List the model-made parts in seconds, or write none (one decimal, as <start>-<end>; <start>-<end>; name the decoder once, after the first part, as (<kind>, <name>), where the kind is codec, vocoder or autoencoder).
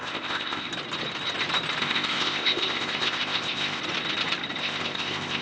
0.0-0.7 (codec, ZipCodec); 1.8-3.8; 4.6-5.4